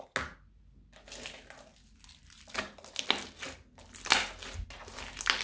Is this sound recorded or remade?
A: recorded